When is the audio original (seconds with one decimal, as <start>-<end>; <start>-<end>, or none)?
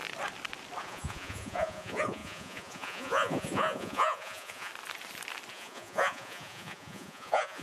0.0-0.8; 4.7-5.5